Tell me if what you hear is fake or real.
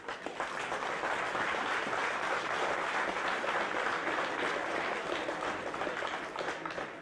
real